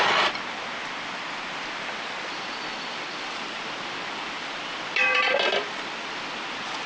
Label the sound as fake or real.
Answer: fake